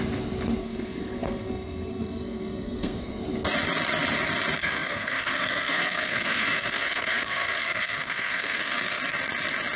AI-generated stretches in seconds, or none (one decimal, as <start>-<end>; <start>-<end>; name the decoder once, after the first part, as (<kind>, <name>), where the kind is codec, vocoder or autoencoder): 0.6-3.2 (codec, SNAC); 4.6-9.0